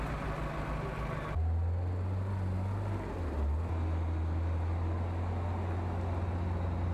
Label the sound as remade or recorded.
recorded